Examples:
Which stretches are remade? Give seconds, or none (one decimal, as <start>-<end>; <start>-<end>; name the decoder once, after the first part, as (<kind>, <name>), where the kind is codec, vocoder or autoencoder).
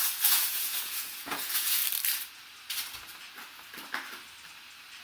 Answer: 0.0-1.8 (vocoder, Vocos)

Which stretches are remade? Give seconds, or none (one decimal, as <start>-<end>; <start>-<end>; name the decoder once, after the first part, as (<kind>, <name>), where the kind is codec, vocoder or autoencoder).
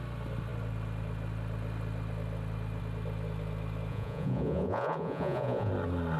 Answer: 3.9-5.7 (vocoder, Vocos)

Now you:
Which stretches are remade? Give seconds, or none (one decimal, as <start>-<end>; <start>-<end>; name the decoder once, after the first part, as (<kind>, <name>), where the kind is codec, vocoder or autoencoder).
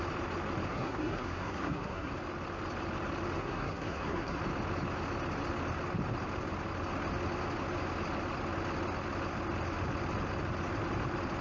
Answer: 0.7-2.1 (codec, SNAC); 3.4-4.4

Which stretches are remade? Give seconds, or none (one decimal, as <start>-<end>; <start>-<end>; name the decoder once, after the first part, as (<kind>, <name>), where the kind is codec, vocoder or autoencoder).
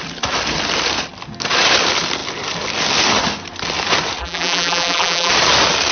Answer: 4.2-5.3 (vocoder, BigVGAN v2)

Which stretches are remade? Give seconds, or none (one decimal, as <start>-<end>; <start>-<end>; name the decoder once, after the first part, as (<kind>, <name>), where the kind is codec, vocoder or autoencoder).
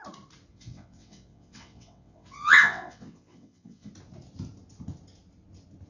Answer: 0.5-3.9 (vocoder, WaveNeXt)